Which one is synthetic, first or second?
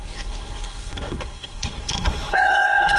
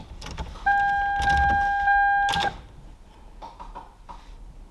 first